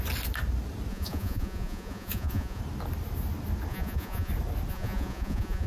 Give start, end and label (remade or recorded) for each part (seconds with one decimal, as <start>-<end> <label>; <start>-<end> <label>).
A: 0.0-0.9 recorded; 0.9-2.6 remade; 2.6-3.7 recorded; 3.7-4.3 remade; 4.3-4.7 recorded; 4.7-5.7 remade